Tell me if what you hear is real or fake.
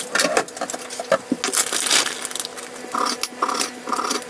real